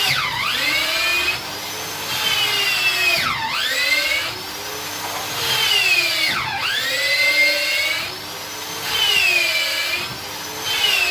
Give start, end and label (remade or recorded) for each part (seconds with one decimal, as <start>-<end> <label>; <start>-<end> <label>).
0.0-11.1 recorded